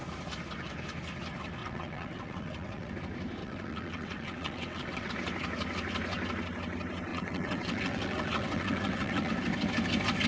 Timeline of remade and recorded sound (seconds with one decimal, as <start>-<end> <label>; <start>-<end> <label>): 0.0-1.6 recorded; 1.6-2.9 remade; 2.9-3.4 recorded; 3.4-5.1 remade; 5.1-7.1 recorded; 7.1-9.3 remade; 9.3-10.3 recorded